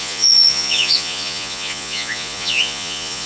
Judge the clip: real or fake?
fake